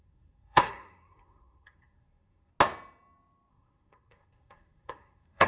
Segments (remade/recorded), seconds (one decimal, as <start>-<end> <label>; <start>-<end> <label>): 0.0-2.5 remade; 2.5-3.5 recorded; 3.5-5.5 remade